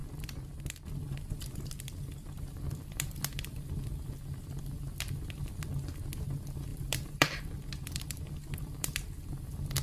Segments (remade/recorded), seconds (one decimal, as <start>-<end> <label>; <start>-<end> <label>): 0.0-6.7 recorded; 6.7-7.4 remade; 7.4-9.8 recorded